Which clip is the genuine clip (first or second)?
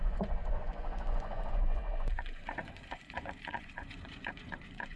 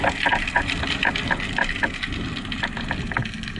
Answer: second